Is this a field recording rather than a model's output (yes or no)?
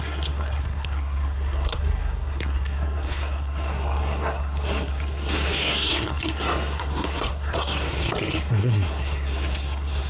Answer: no